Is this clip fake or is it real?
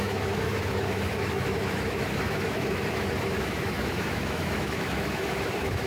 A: fake